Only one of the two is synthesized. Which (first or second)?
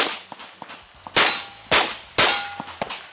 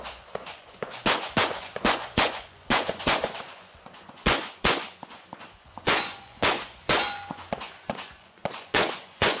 second